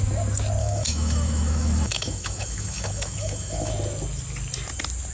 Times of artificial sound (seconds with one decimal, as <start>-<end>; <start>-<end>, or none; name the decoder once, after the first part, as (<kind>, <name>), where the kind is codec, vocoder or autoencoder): 0.6-3.7 (autoencoder, DAC-VAE)